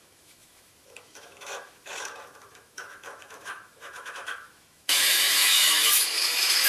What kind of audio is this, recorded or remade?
remade